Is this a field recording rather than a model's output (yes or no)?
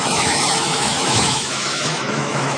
no